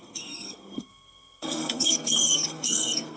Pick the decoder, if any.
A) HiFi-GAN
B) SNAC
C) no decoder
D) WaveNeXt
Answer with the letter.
B